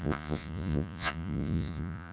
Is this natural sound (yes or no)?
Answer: no